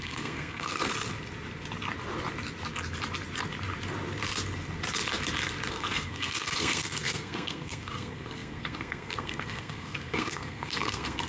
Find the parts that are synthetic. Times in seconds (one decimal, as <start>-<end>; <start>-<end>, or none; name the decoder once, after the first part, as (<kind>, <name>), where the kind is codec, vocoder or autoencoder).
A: 0.0-0.9 (codec, SNAC); 5.7-11.3